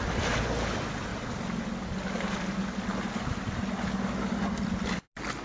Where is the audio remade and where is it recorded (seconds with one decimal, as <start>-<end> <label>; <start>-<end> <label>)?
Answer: 0.0-5.4 recorded